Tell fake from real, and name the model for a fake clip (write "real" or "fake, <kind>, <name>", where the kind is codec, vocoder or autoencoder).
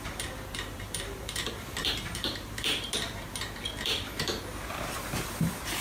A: fake, vocoder, BigVGAN v2